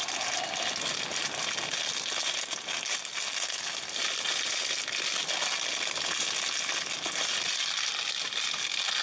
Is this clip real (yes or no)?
yes